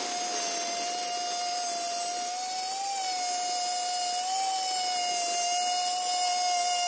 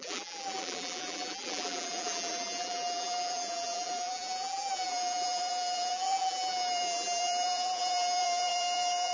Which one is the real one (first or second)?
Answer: first